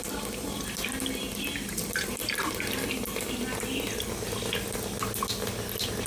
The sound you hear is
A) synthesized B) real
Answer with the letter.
B